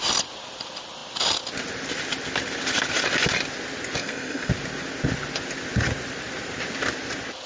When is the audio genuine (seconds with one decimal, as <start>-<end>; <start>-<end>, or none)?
0.0-4.0; 4.5-7.5